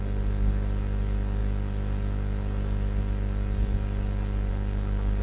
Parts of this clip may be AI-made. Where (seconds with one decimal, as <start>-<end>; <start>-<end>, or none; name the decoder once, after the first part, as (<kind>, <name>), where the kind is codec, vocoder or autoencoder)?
none